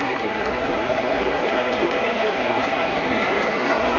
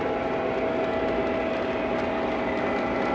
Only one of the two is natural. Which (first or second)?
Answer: second